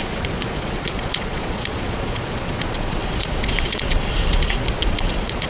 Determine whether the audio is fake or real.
fake